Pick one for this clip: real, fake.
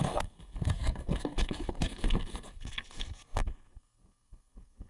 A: fake